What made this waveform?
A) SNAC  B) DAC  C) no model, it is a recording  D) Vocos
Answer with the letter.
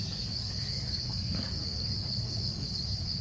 B